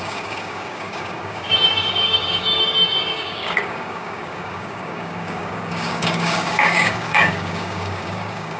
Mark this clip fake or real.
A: fake